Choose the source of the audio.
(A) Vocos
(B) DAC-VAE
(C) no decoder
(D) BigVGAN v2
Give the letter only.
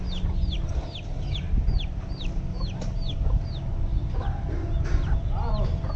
C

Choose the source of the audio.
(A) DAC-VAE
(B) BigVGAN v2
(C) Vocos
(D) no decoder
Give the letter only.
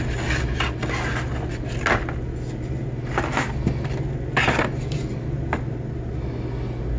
D